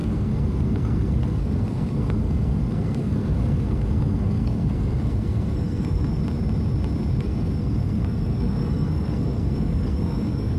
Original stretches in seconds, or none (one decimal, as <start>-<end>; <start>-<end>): 6.2-7.2